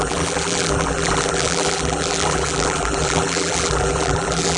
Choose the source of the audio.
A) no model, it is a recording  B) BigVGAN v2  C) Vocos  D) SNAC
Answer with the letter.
B